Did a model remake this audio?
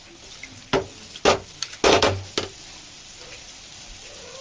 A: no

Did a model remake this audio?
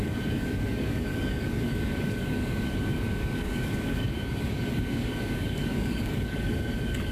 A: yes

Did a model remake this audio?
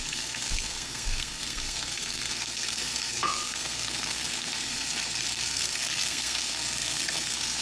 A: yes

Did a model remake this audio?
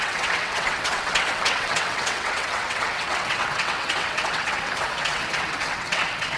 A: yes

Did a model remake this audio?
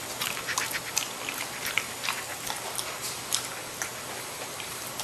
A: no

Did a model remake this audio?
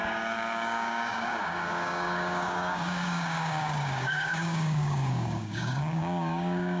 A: yes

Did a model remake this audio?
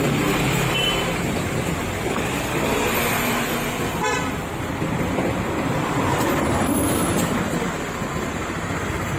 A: yes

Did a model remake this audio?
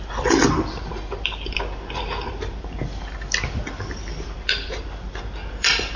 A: yes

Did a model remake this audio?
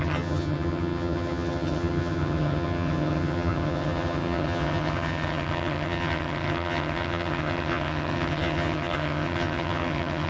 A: yes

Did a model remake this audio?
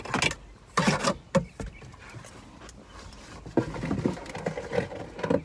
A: no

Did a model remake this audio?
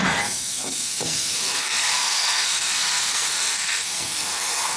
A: yes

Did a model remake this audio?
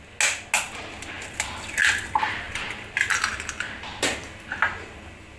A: no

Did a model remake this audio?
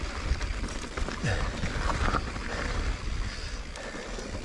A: no